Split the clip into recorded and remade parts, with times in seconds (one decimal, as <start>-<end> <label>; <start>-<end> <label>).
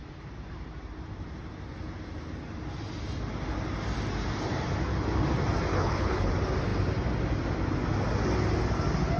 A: 0.0-5.7 recorded; 5.7-6.3 remade; 6.3-9.2 recorded